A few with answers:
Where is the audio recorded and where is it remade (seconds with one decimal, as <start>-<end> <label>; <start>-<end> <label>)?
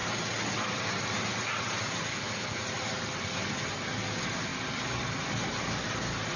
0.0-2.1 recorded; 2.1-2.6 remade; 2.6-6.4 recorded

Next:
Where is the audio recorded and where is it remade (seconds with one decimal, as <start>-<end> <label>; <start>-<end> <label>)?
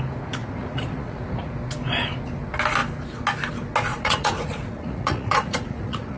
0.0-0.4 recorded; 0.4-1.5 remade; 1.5-3.9 recorded; 3.9-6.2 remade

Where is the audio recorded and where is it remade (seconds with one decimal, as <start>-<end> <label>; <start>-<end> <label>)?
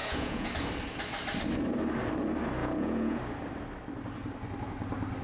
0.0-0.5 remade; 0.5-2.6 recorded; 2.6-3.2 remade; 3.2-5.2 recorded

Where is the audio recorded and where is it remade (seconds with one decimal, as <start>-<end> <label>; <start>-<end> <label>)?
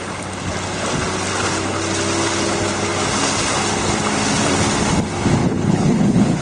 0.0-5.4 recorded; 5.4-6.4 remade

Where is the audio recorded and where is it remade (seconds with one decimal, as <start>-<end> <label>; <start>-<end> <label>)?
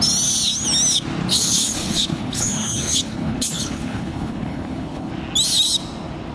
0.0-1.3 recorded; 1.3-5.1 remade; 5.1-6.3 recorded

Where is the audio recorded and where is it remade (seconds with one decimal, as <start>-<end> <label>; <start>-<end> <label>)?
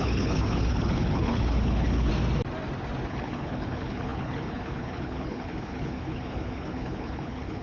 0.0-2.1 remade; 2.1-3.1 recorded; 3.1-7.6 remade